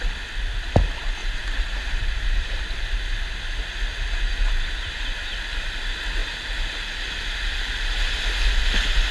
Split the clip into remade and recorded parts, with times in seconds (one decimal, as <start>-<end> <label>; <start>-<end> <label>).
0.0-1.2 recorded; 1.2-2.4 remade; 2.4-6.2 recorded; 6.2-7.0 remade; 7.0-9.1 recorded

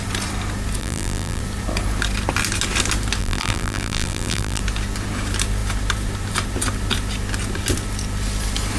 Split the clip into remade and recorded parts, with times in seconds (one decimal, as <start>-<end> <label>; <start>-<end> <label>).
0.0-0.8 recorded; 0.8-1.4 remade; 1.4-3.2 recorded; 3.2-4.6 remade; 4.6-8.8 recorded

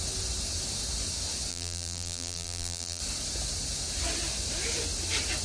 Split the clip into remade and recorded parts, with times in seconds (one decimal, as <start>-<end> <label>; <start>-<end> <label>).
0.0-1.5 recorded; 1.5-3.0 remade; 3.0-5.4 recorded